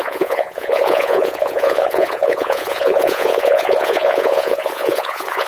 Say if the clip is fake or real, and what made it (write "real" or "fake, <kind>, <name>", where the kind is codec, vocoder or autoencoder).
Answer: fake, vocoder, Vocos